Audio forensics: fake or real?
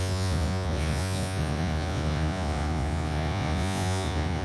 fake